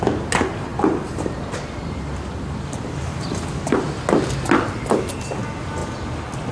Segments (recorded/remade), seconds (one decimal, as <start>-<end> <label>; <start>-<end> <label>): 0.0-0.7 recorded; 0.7-3.5 remade; 3.5-6.5 recorded